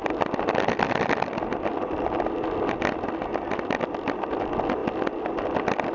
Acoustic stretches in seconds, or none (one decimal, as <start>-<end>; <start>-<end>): 0.0-5.9